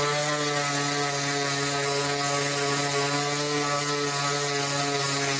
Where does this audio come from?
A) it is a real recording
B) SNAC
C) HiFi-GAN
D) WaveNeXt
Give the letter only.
A